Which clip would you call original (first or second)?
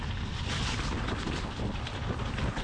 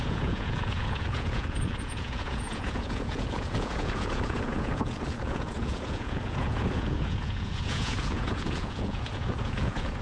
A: first